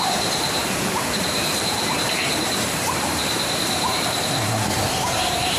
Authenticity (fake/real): fake